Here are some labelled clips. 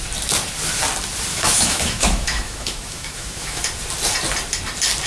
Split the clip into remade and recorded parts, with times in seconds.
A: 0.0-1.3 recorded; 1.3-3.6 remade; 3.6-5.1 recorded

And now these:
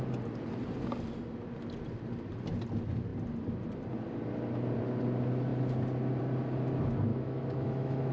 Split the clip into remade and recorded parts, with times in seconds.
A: 0.0-7.1 recorded; 7.1-8.1 remade

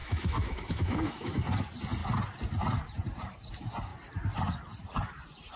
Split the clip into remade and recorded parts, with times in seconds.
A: 0.0-1.4 remade; 1.4-5.6 recorded

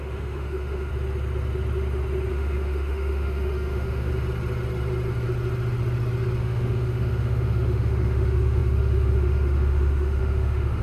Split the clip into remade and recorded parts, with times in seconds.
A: 0.0-0.9 remade; 0.9-2.3 recorded; 2.3-4.1 remade; 4.1-6.4 recorded; 6.4-10.8 remade

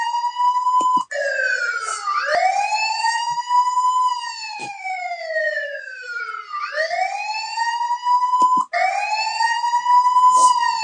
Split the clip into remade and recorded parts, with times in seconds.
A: 0.0-2.8 recorded; 2.8-3.4 remade; 3.4-4.6 recorded; 4.6-6.2 remade; 6.2-10.8 recorded

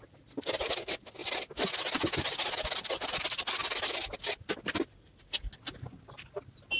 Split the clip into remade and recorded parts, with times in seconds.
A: 0.0-6.8 recorded